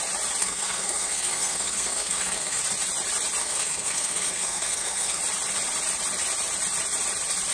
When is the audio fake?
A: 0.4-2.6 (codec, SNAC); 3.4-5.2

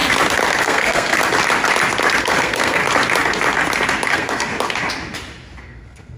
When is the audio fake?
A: 0.6-1.1 (codec, SNAC); 2.2-2.8; 4.1-4.5; 5.6-6.2

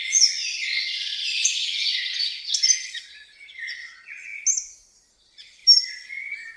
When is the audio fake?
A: 0.0-4.3 (vocoder, Vocos); 5.1-5.6

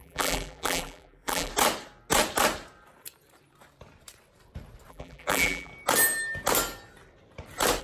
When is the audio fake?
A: 0.0-1.5 (vocoder, BigVGAN v2); 4.9-5.7

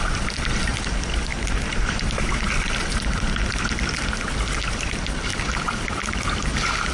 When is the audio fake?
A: 1.3-2.4 (vocoder, BigVGAN v2)